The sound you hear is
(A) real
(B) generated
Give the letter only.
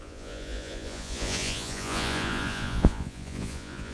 B